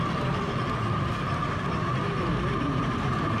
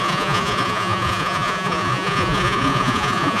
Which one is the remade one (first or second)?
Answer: second